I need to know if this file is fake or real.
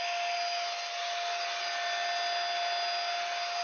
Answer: real